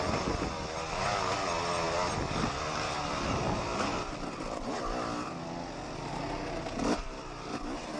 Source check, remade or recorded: recorded